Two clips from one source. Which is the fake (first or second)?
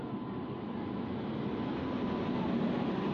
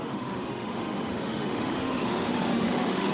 second